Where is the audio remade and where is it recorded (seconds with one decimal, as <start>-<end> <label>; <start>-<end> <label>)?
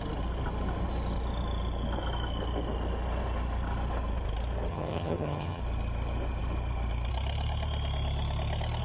0.0-4.7 recorded; 4.7-5.6 remade; 5.6-8.8 recorded